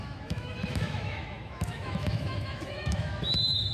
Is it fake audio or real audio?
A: fake